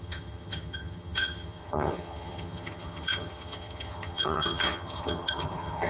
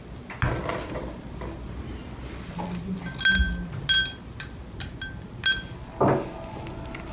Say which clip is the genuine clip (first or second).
second